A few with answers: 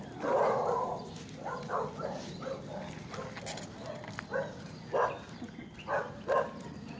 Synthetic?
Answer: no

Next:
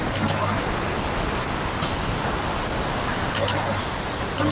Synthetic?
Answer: no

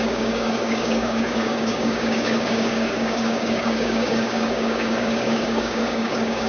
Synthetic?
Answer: yes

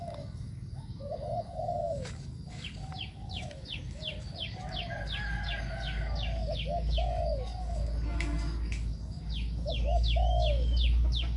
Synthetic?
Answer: yes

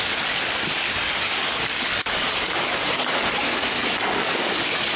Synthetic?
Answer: yes